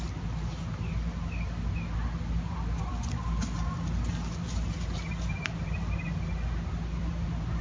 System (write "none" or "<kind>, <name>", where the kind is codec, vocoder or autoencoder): none